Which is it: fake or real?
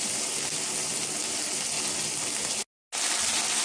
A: real